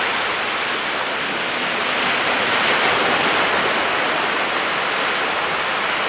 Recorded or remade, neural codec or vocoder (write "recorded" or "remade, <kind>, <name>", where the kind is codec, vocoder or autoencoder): recorded